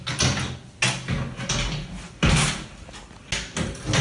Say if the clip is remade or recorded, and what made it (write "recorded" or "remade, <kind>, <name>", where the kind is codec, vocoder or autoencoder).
recorded